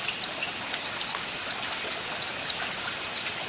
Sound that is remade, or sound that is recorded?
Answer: recorded